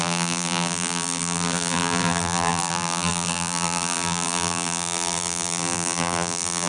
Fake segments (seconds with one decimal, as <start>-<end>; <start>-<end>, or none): 0.0-6.7